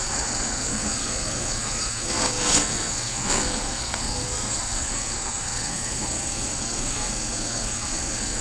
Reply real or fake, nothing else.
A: fake